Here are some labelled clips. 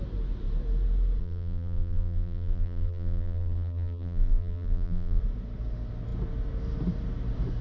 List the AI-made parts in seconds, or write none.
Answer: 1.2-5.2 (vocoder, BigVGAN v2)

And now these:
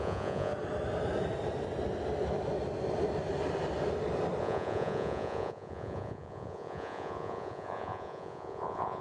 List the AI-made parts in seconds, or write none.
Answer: 0.0-0.5 (vocoder, Vocos); 4.4-9.0

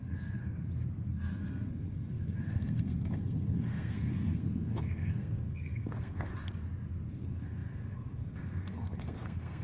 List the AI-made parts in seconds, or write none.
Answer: 0.0-0.4 (codec, SNAC); 1.1-6.3; 7.1-9.6

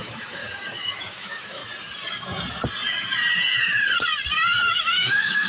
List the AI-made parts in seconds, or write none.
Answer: 0.0-0.4 (autoencoder, DAC-VAE); 1.0-1.6; 4.7-5.5

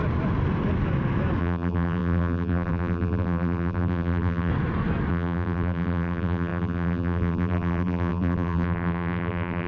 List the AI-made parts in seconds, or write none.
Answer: 1.4-4.5 (vocoder, BigVGAN v2); 5.1-9.7

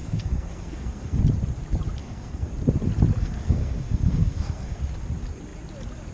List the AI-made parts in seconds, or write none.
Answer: 0.0-1.2 (codec, SNAC); 2.0-2.5; 3.2-4.8

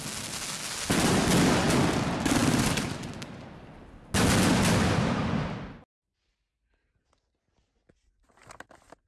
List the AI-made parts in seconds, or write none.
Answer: none

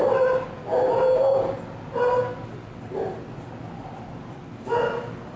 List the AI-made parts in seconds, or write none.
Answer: none